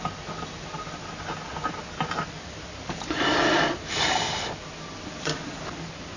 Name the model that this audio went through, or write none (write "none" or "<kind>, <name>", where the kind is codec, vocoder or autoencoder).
none